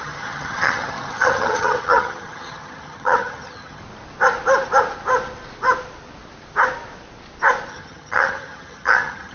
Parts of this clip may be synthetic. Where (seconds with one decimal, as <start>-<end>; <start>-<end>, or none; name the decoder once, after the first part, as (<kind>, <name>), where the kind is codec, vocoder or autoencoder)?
0.0-3.8 (vocoder, HiFi-GAN); 7.7-9.3